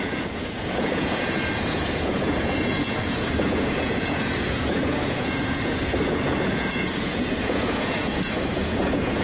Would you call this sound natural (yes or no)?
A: no